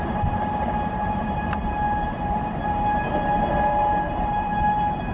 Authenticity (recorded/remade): remade